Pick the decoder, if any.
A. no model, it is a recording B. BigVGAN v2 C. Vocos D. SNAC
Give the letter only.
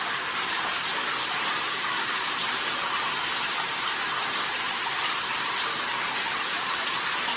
B